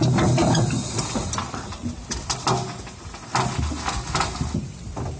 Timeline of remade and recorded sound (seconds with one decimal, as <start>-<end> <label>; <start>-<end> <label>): 0.0-5.2 recorded